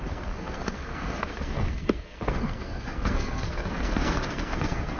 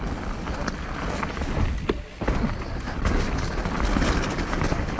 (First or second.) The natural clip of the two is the second